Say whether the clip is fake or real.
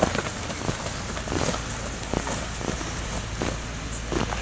real